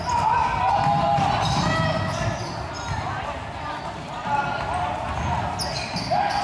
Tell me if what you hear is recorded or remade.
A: recorded